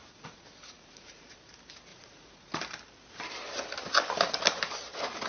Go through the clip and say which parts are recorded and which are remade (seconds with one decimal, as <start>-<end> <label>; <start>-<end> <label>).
0.0-1.5 remade; 1.5-1.9 recorded; 1.9-2.6 remade; 2.6-5.3 recorded